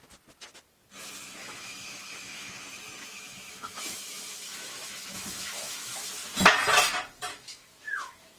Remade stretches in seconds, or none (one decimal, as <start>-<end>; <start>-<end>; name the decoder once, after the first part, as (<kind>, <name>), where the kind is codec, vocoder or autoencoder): 1.4-2.5 (autoencoder, DAC-VAE); 3.1-6.1; 7.3-8.4